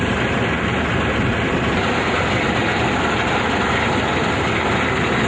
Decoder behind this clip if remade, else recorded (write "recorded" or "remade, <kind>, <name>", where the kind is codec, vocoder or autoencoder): recorded